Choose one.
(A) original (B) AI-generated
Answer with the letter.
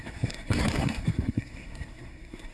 B